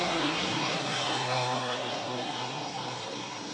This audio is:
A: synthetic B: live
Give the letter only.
A